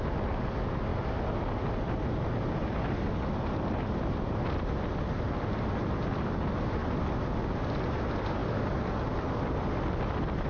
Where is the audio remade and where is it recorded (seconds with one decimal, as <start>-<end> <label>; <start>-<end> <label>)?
0.0-10.5 recorded